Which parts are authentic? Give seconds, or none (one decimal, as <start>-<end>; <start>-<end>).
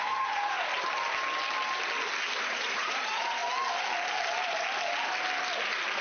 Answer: 0.7-2.4; 3.4-6.0